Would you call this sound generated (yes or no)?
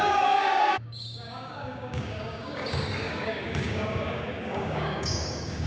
yes